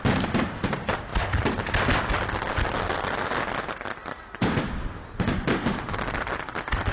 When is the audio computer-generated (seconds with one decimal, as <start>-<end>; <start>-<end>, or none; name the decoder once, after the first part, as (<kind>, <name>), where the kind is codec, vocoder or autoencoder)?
none